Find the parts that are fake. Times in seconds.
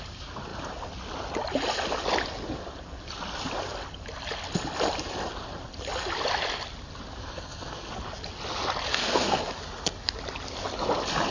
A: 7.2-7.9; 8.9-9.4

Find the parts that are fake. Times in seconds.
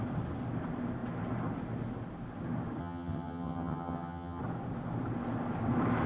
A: 2.8-4.4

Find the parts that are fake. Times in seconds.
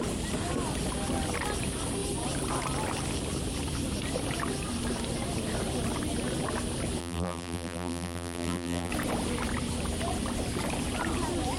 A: 7.0-8.9